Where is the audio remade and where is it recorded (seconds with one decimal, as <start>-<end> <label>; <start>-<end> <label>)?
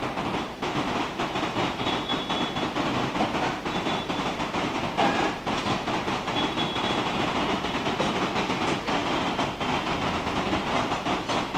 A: 0.0-2.1 remade; 2.1-2.7 recorded; 2.7-9.0 remade; 9.0-10.9 recorded; 10.9-11.6 remade